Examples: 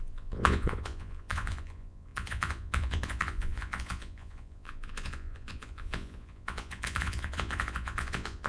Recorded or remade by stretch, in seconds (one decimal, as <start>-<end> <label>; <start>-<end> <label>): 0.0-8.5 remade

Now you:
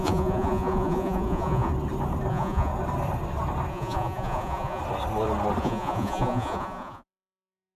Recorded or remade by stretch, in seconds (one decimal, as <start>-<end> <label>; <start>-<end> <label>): 0.0-1.7 remade; 1.7-2.3 recorded; 2.3-2.7 remade; 2.7-3.7 recorded; 3.7-4.8 remade; 4.8-5.6 recorded; 5.6-7.8 remade

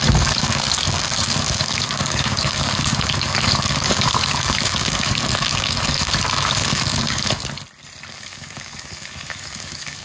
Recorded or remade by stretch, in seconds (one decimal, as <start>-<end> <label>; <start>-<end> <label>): 0.0-7.4 remade; 7.4-8.1 recorded; 8.1-10.0 remade

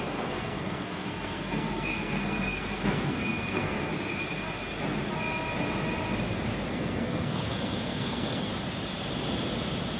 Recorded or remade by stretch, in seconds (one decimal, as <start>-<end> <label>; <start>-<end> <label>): 0.0-3.9 remade; 3.9-6.7 recorded; 6.7-8.5 remade; 8.5-10.0 recorded

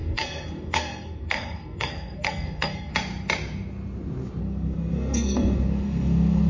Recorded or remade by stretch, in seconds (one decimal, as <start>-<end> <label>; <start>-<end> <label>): 0.0-2.9 remade; 2.9-4.4 recorded; 4.4-6.5 remade

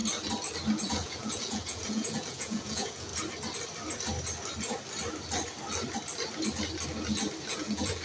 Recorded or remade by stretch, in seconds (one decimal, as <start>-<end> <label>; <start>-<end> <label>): 0.0-0.8 recorded; 0.8-3.1 remade; 3.1-7.5 recorded; 7.5-8.0 remade

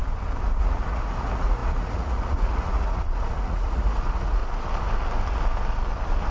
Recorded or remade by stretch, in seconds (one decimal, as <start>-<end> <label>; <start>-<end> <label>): 0.0-0.6 recorded; 0.6-4.4 remade; 4.4-6.3 recorded

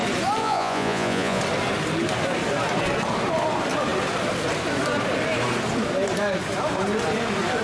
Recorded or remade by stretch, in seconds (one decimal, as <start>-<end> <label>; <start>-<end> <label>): 0.0-0.4 recorded; 0.4-1.4 remade; 1.4-7.6 recorded